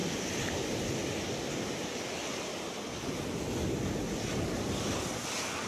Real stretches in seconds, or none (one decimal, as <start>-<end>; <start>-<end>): 0.0-5.7